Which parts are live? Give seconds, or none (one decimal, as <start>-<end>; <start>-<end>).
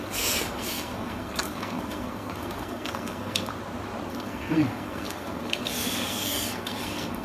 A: 3.5-4.1